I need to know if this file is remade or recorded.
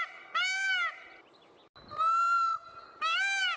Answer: recorded